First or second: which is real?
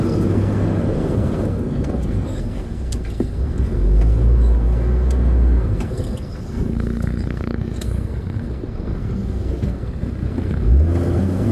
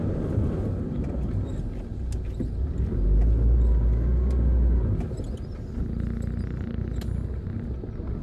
second